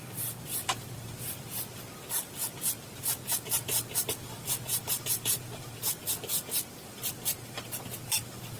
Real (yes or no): no